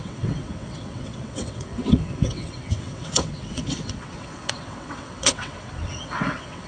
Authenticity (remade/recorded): remade